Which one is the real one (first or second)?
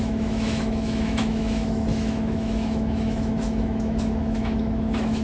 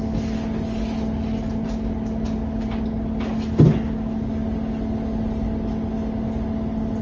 second